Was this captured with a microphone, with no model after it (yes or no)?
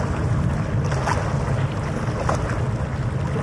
yes